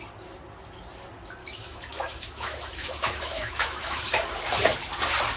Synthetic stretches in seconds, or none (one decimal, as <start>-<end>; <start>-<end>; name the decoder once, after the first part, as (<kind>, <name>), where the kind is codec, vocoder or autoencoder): 1.4-4.0 (autoencoder, DAC-VAE)